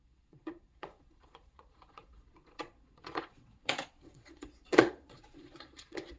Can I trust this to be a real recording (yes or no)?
no